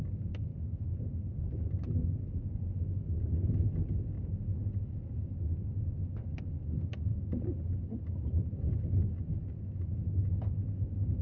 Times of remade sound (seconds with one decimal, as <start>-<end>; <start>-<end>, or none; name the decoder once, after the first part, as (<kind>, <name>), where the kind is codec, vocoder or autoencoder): none